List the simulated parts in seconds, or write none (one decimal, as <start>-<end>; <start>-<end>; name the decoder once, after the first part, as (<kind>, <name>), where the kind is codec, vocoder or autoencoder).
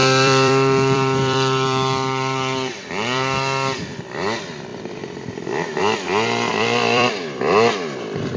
0.0-4.0 (vocoder, BigVGAN v2); 6.5-7.1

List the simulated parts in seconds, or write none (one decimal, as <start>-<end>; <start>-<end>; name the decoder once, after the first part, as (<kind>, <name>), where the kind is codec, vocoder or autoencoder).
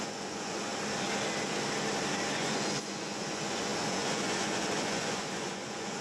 0.0-0.7 (vocoder, Vocos); 2.3-6.0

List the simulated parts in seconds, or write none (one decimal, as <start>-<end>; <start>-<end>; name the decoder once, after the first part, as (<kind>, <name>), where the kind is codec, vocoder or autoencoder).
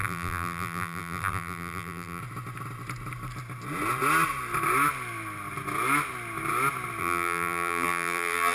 0.0-2.2 (vocoder, BigVGAN v2); 7.0-8.5